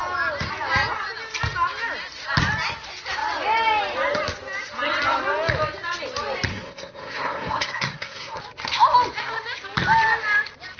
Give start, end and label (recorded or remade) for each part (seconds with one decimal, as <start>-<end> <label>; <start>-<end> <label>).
0.0-6.5 recorded; 6.5-8.4 remade; 8.4-10.8 recorded